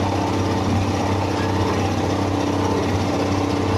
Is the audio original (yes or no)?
yes